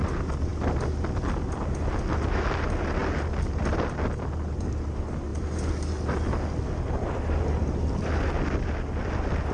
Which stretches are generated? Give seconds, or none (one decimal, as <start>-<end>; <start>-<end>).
none